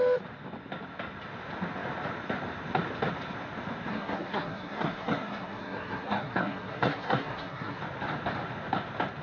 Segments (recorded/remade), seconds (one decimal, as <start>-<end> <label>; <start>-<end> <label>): 0.0-3.9 recorded; 3.9-7.8 remade; 7.8-9.2 recorded